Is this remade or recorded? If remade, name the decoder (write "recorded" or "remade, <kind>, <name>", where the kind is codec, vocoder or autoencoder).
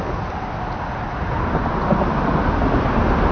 recorded